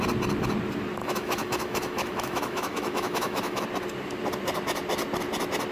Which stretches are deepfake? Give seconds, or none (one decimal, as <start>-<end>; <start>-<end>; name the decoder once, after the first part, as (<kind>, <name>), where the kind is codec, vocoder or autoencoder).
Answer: 1.0-3.6 (autoencoder, DAC-VAE)